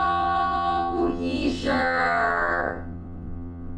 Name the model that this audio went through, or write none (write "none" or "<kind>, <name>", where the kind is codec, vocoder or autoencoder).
vocoder, WaveNeXt